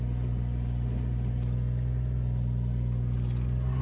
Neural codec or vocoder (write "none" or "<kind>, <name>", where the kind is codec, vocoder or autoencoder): none